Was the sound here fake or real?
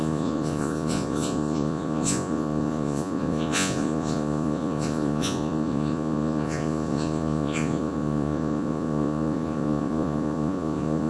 fake